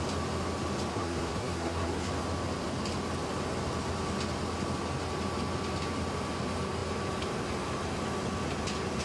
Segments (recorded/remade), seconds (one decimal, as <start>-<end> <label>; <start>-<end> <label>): 0.0-0.9 recorded; 0.9-2.1 remade; 2.1-9.0 recorded